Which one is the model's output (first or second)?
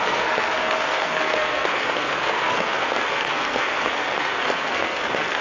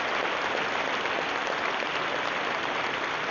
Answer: first